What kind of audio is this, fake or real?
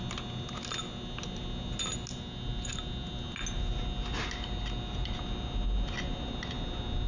real